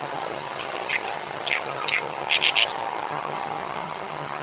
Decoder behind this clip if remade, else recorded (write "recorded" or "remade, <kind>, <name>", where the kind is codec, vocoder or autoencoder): remade, vocoder, HiFi-GAN